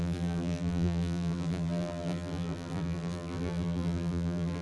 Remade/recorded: remade